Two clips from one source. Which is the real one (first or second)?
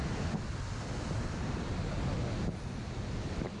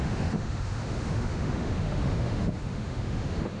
first